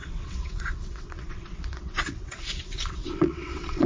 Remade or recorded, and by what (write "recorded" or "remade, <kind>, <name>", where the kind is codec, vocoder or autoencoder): remade, vocoder, WaveNeXt